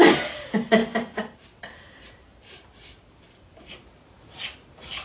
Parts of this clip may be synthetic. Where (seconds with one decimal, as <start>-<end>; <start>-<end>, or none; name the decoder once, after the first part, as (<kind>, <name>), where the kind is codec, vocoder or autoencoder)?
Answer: 0.8-3.8 (vocoder, BigVGAN v2)